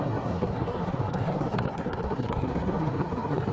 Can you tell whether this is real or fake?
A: fake